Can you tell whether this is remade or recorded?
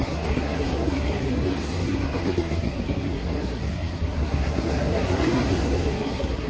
remade